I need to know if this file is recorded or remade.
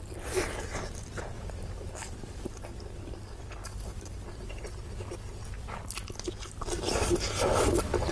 remade